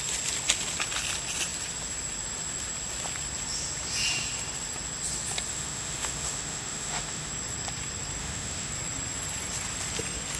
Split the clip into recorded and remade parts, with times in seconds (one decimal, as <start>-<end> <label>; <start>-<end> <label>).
0.0-5.5 recorded; 5.5-7.3 remade; 7.3-8.2 recorded; 8.2-8.7 remade; 8.7-10.4 recorded

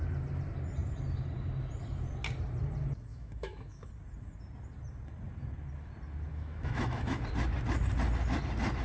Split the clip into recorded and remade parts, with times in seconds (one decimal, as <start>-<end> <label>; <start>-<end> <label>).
0.0-3.1 recorded; 3.1-3.9 remade; 3.9-6.3 recorded; 6.3-7.2 remade; 7.2-8.8 recorded

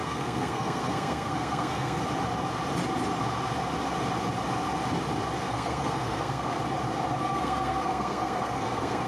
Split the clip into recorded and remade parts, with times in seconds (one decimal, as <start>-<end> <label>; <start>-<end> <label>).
0.0-2.0 remade; 2.0-5.5 recorded; 5.5-6.6 remade; 6.6-7.2 recorded; 7.2-9.1 remade

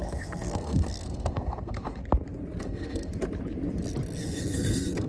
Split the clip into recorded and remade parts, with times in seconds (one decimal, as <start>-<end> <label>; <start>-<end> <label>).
0.0-2.0 remade; 2.0-2.6 recorded; 2.6-3.1 remade; 3.1-4.2 recorded; 4.2-5.1 remade

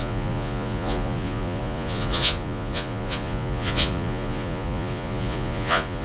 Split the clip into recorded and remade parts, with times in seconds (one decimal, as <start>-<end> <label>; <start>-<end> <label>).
0.0-6.0 remade